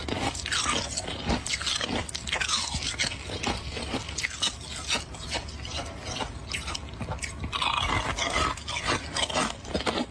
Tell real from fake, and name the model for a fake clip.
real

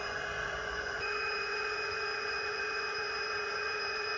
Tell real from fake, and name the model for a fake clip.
fake, vocoder, Vocos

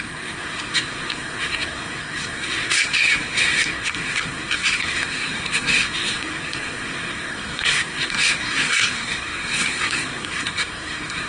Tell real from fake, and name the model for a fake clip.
fake, codec, SNAC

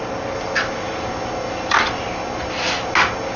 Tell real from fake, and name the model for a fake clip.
real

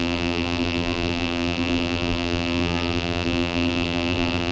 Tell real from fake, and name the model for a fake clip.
fake, vocoder, BigVGAN v2